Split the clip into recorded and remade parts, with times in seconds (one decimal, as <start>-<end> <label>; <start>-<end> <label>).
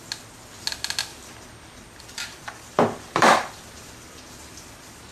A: 0.0-1.1 recorded; 1.1-4.2 remade; 4.2-5.1 recorded